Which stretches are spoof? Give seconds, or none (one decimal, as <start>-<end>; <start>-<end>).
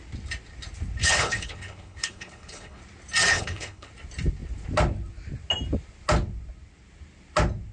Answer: 1.0-2.8; 3.3-3.9